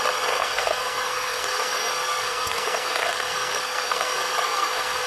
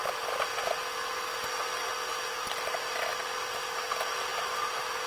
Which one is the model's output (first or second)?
first